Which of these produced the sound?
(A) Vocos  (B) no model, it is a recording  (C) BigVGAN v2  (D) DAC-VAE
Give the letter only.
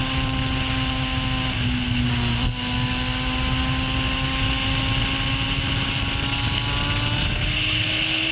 B